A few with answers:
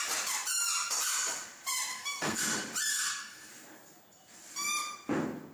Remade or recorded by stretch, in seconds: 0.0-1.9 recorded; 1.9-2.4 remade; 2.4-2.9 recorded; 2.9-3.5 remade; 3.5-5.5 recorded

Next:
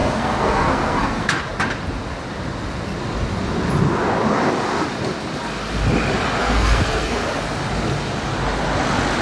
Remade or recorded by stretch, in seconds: 0.0-1.4 remade; 1.4-6.4 recorded; 6.4-7.4 remade; 7.4-9.2 recorded

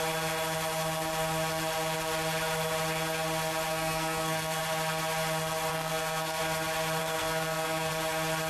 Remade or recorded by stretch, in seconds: 0.0-3.7 recorded; 3.7-4.6 remade; 4.6-5.7 recorded; 5.7-6.4 remade; 6.4-7.0 recorded; 7.0-7.9 remade; 7.9-8.5 recorded

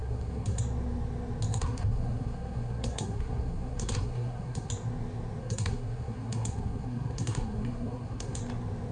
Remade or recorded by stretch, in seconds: 0.0-0.6 remade; 0.6-1.5 recorded; 1.5-4.7 remade; 4.7-5.4 recorded; 5.4-8.4 remade; 8.4-8.9 recorded

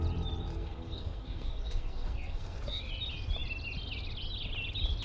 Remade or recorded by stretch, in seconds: 0.0-0.5 recorded; 0.5-2.8 remade; 2.8-5.0 recorded

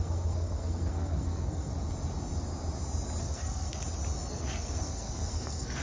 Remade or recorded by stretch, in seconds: 0.0-1.7 remade; 1.7-3.2 recorded; 3.2-3.8 remade; 3.8-4.3 recorded; 4.3-5.8 remade

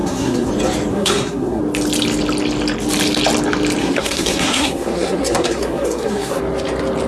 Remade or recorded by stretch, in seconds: 0.0-0.5 remade; 0.5-0.9 recorded; 0.9-1.6 remade; 1.6-3.8 recorded; 3.8-6.4 remade; 6.4-7.1 recorded

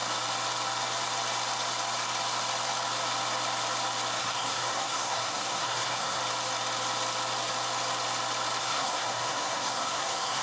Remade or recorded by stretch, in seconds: 0.0-4.2 recorded; 4.2-6.2 remade; 6.2-8.6 recorded; 8.6-10.4 remade